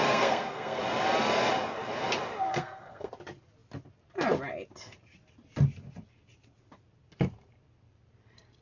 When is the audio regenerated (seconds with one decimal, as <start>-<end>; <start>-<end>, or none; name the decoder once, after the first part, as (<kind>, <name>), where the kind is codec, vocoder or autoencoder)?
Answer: 0.0-0.8 (codec, SNAC); 2.5-3.1

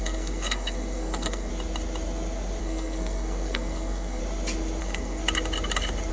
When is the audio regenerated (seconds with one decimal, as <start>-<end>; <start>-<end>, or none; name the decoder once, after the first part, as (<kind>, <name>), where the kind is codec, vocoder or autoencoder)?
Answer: 0.0-1.5 (codec, SNAC); 2.6-4.2; 4.8-5.2

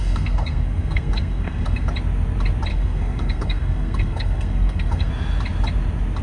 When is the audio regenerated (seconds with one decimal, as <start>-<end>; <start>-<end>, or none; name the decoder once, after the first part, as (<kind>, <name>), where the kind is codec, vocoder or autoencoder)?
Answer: 0.0-1.9 (codec, SNAC); 2.7-5.1

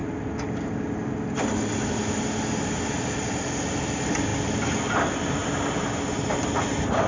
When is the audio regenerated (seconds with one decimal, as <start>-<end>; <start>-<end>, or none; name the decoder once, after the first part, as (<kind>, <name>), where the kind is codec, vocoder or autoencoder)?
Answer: none

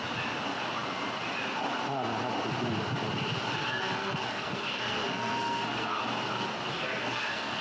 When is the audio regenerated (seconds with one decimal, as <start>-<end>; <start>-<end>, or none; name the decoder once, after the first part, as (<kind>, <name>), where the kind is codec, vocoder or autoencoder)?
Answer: 3.6-6.0 (codec, SNAC); 6.7-7.6